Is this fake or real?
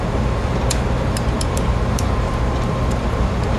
fake